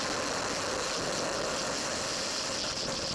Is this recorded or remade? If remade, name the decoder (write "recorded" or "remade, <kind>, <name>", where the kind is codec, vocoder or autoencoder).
recorded